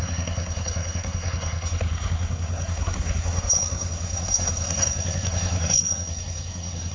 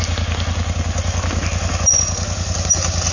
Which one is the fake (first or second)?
first